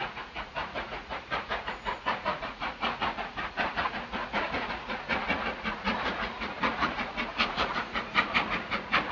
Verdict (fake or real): fake